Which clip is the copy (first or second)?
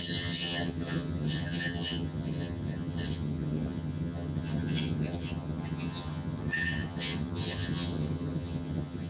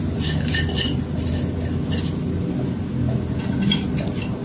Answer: first